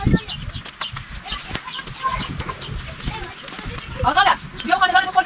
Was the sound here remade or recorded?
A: recorded